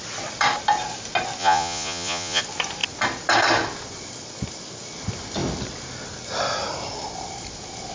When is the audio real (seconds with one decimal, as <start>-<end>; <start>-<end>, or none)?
0.0-1.4; 2.4-7.9